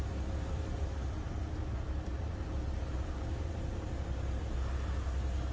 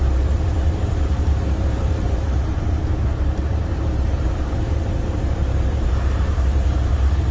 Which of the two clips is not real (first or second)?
second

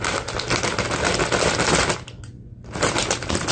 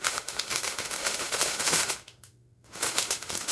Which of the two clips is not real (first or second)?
second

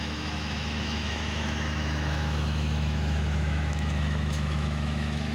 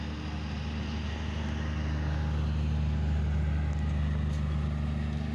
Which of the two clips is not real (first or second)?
first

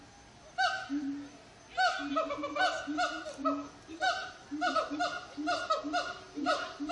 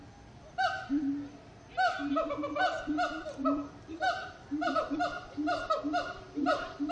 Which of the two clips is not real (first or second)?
second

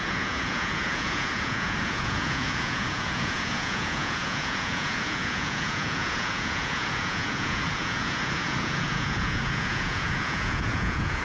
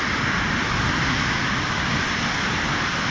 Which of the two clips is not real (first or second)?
first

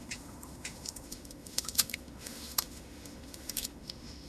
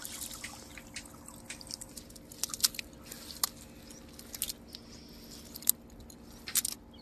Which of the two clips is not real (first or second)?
first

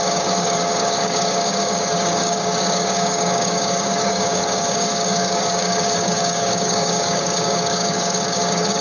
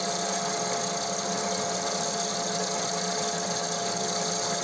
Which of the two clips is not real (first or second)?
first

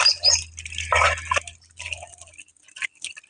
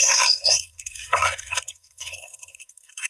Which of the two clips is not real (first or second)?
second